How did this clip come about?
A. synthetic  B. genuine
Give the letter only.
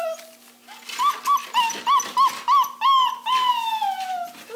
B